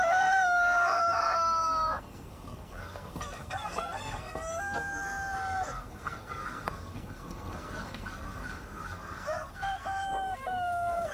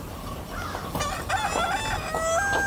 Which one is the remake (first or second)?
first